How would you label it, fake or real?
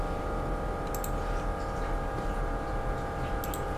real